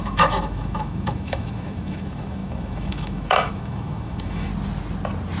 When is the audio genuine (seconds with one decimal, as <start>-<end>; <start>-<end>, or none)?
4.5-5.4